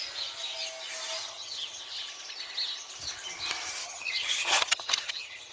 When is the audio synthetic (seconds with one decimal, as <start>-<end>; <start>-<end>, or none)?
1.2-1.8; 3.8-5.5